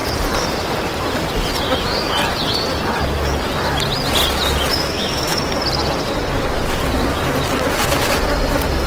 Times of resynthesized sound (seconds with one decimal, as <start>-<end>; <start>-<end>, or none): 4.7-5.4